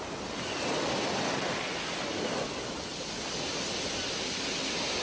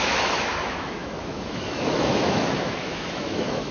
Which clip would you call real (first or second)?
first